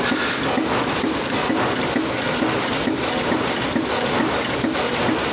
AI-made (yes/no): no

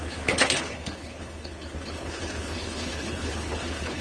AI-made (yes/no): yes